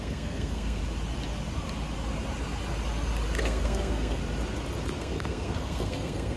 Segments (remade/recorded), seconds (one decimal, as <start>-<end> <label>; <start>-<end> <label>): 0.0-0.8 remade; 0.8-3.4 recorded; 3.4-4.2 remade; 4.2-5.0 recorded; 5.0-6.4 remade